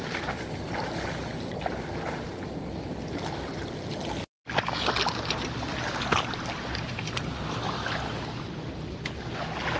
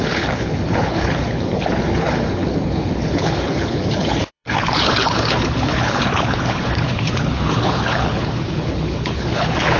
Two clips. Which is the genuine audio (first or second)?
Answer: first